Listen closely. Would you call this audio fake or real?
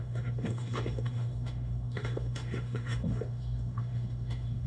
fake